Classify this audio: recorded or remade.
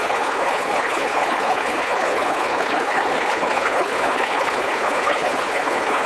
remade